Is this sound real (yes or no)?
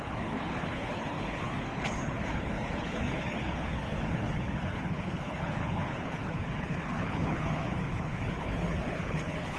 no